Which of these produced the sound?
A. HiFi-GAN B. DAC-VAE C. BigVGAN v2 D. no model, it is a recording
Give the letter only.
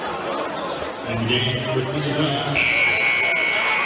D